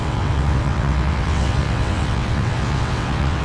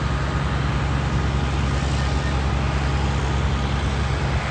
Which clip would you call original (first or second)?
second